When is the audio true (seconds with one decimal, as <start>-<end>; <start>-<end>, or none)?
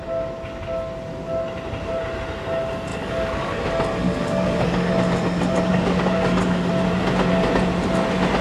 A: 0.0-2.9; 3.5-4.0; 4.9-5.7; 6.7-8.4